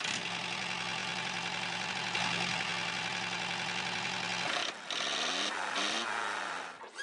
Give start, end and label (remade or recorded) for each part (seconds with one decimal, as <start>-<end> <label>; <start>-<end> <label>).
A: 0.0-1.0 recorded; 1.0-1.9 remade; 1.9-4.6 recorded; 4.6-6.1 remade; 6.1-7.0 recorded